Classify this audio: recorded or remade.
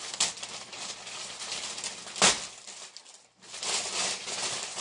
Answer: recorded